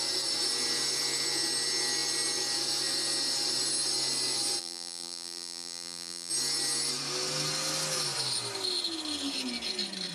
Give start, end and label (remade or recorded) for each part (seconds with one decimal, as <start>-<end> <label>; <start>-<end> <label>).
0.0-4.6 recorded; 4.6-6.3 remade; 6.3-10.1 recorded